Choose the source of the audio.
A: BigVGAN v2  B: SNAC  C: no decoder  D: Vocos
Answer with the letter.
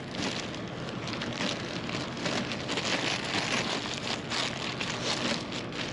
C